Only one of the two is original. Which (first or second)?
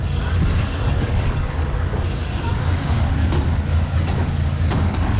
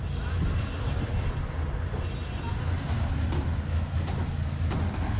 second